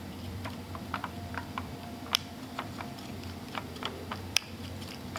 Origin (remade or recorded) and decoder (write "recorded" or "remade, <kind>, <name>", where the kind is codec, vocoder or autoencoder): remade, vocoder, BigVGAN v2